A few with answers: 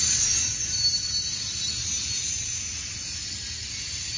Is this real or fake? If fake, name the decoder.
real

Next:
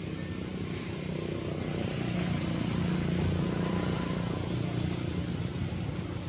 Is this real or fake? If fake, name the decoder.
real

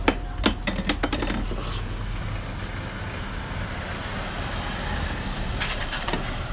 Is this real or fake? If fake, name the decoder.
real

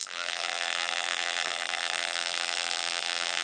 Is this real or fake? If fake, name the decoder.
fake, vocoder, BigVGAN v2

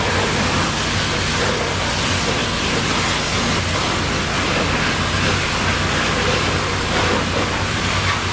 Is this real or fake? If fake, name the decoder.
real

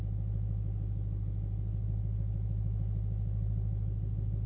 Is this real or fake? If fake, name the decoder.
real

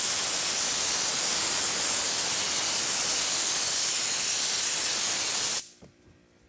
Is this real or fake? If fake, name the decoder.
fake, vocoder, BigVGAN v2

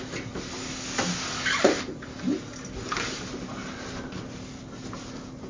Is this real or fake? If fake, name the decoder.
real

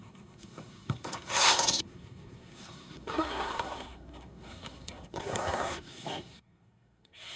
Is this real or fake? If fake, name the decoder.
fake, codec, SNAC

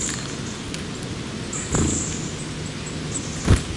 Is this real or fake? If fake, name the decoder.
real